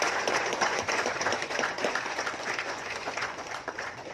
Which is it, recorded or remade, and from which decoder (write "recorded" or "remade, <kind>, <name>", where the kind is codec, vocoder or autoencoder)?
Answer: remade, vocoder, Vocos